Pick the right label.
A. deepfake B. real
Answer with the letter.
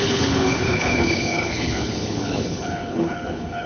A